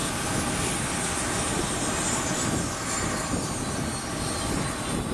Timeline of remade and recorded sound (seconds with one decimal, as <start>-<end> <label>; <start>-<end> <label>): 0.0-5.1 recorded